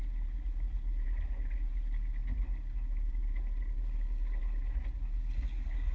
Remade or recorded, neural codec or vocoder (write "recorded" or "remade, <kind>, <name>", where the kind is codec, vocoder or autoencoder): recorded